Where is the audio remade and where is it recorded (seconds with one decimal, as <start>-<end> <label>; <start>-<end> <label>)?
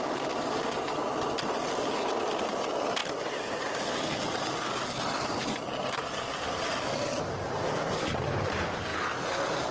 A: 0.0-9.7 recorded